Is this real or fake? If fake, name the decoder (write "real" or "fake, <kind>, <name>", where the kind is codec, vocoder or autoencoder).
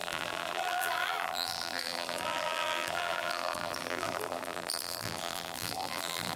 fake, vocoder, BigVGAN v2